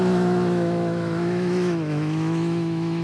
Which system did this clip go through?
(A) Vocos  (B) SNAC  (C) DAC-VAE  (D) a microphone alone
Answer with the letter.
C